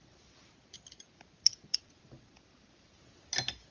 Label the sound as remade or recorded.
recorded